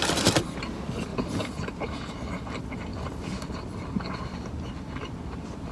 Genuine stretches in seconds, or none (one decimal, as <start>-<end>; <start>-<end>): 0.0-1.1; 2.1-5.7